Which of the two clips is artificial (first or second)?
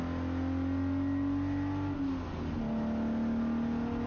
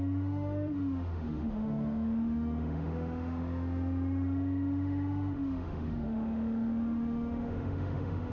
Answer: second